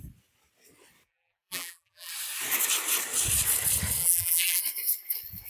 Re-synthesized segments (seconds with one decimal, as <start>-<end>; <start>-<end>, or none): 1.1-2.1; 4.0-4.6